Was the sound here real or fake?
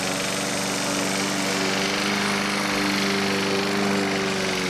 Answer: real